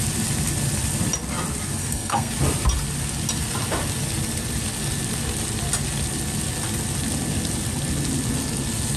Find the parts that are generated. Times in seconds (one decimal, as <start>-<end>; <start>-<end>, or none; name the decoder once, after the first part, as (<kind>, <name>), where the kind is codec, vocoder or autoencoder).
1.8-2.3 (codec, SNAC)